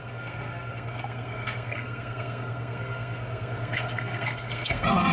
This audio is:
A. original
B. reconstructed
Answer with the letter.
B